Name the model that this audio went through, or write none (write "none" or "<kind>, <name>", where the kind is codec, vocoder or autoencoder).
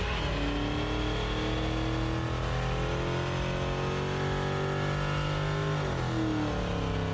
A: none